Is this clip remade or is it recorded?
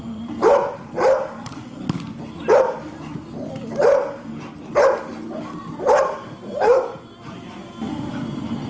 recorded